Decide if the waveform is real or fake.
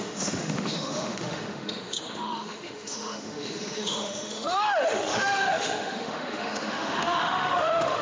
fake